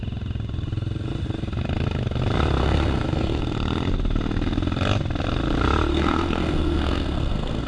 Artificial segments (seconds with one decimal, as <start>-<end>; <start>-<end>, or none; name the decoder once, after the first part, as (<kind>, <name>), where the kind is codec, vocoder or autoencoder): 2.6-3.4 (codec, SNAC); 5.9-7.7